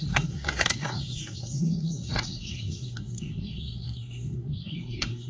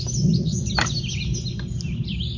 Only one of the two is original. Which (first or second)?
second